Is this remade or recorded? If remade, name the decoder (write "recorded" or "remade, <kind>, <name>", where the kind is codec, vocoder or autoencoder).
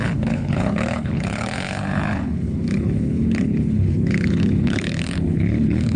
remade, codec, HILCodec